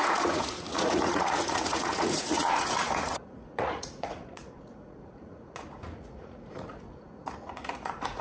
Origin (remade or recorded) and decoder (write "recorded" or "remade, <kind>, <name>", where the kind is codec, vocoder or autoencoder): remade, vocoder, Vocos